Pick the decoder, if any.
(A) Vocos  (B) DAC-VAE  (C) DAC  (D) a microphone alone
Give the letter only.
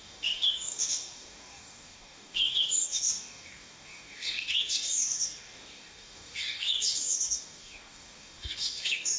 C